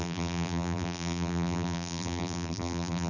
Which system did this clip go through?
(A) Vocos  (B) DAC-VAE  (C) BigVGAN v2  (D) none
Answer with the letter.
C